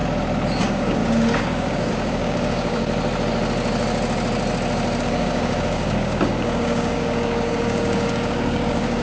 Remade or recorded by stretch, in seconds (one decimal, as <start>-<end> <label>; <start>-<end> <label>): 0.0-0.6 recorded; 0.6-2.8 remade; 2.8-5.0 recorded; 5.0-9.0 remade